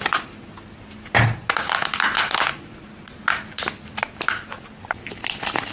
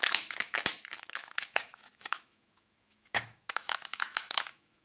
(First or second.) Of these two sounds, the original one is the first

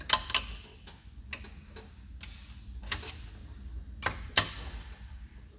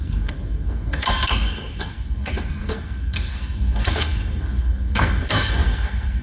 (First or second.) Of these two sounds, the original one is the first